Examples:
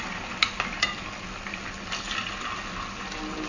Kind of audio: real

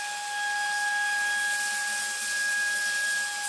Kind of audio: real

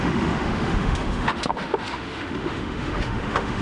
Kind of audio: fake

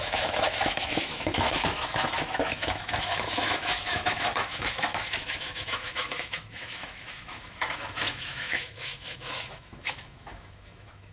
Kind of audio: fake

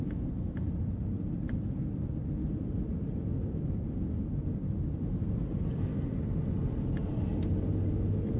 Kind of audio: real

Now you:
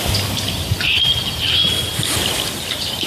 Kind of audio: fake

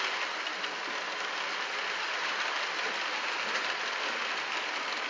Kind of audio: real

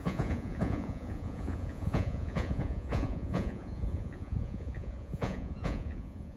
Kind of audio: fake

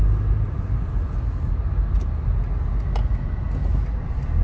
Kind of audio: real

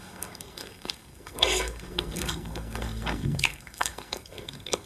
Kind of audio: fake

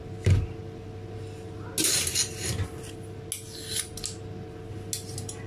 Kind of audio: real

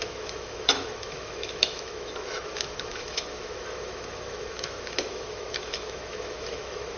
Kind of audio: fake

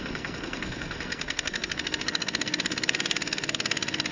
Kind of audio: fake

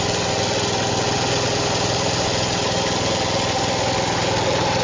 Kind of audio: real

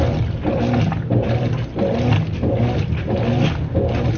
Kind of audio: real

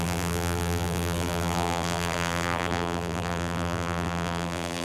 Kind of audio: fake